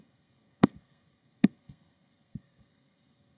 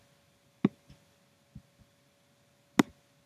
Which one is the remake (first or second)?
first